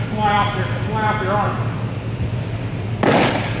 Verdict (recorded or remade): recorded